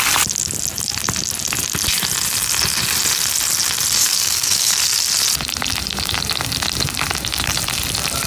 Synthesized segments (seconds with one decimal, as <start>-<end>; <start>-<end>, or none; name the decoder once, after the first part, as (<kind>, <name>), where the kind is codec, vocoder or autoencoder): 4.0-4.7 (codec, DAC)

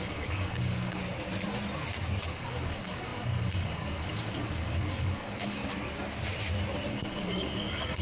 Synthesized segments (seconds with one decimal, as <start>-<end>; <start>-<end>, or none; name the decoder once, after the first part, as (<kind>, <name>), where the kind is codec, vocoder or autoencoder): 0.0-1.0 (codec, DAC); 2.2-5.6; 6.9-8.0